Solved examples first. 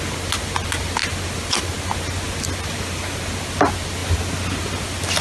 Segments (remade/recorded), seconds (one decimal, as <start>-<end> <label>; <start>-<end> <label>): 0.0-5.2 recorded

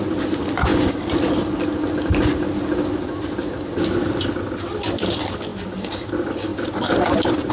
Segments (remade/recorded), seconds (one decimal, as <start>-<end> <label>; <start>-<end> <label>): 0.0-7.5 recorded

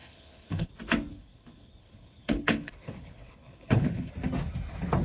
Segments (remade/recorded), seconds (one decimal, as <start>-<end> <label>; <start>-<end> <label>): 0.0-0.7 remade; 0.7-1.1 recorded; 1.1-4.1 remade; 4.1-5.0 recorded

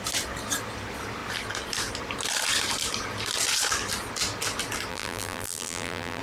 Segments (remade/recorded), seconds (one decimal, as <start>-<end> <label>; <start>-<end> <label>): 0.0-4.9 recorded; 4.9-6.2 remade

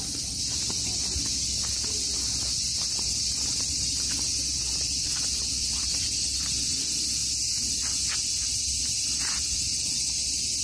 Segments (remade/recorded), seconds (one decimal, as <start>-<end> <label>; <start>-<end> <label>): 0.0-10.6 recorded